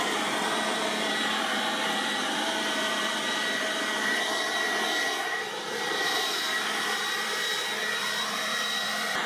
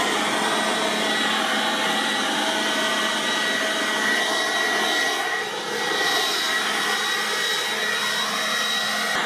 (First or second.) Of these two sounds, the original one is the second